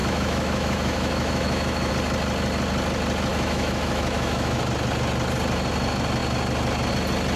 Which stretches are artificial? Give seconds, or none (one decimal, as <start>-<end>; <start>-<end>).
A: 0.0-1.9; 3.3-4.6